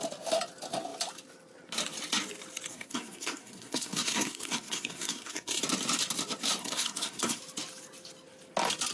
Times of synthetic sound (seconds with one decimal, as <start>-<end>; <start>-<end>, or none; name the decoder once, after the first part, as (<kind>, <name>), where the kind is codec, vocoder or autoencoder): 2.7-5.6 (codec, SNAC); 6.6-7.4

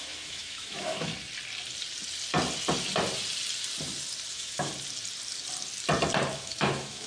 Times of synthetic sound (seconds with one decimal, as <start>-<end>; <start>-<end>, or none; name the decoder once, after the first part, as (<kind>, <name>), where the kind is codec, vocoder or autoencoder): 0.0-1.1 (autoencoder, DAC-VAE); 4.3-4.7; 6.3-7.1

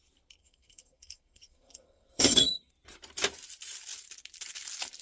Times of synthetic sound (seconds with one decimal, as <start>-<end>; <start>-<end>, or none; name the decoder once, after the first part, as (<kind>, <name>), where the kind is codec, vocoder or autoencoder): 0.4-2.7 (codec, SNAC)

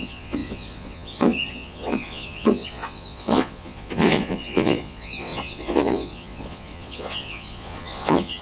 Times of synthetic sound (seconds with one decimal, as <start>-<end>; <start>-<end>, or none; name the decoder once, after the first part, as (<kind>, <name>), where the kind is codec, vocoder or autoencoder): 0.0-8.4 (vocoder, Vocos)